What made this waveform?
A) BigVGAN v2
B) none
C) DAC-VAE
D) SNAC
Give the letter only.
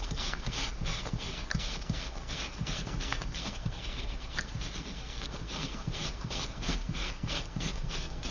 D